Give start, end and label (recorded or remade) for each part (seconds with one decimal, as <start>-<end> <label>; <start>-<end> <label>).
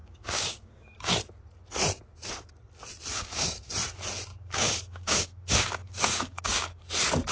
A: 0.0-1.1 remade; 1.1-3.1 recorded; 3.1-3.7 remade; 3.7-4.3 recorded; 4.3-6.8 remade; 6.8-7.3 recorded